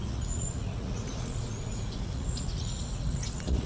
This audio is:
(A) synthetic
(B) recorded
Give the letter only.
A